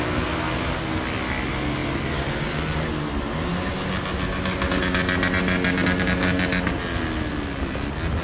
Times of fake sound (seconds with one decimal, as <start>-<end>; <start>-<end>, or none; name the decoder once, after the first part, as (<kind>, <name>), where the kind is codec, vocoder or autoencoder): none